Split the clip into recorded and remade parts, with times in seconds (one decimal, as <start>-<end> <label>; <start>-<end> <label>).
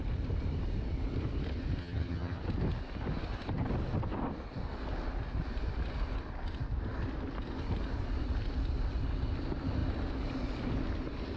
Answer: 0.0-1.8 recorded; 1.8-2.4 remade; 2.4-11.4 recorded